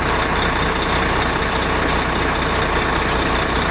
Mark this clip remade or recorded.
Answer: recorded